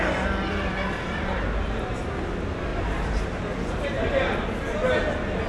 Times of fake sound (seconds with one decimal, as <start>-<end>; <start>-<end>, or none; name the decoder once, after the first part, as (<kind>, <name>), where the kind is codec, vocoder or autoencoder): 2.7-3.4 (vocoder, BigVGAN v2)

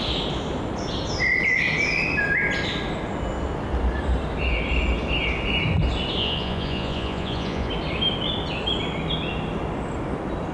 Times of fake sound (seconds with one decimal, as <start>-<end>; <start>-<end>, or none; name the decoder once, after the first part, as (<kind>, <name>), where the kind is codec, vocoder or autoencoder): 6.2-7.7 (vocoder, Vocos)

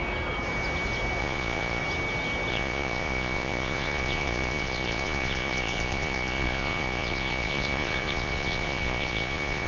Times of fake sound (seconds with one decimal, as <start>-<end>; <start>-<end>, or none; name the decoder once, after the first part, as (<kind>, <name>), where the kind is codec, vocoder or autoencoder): 1.2-1.8 (vocoder, Vocos); 2.5-9.7

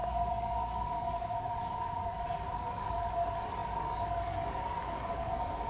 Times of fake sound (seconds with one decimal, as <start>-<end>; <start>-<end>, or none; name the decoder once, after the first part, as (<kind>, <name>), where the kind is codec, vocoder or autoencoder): 0.0-5.7 (codec, DAC)